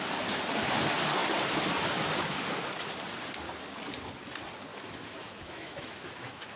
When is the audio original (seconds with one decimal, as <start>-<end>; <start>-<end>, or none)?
0.0-4.7